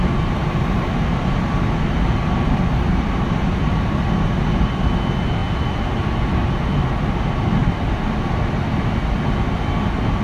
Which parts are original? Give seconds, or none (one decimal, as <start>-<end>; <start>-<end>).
0.0-0.4; 5.0-10.2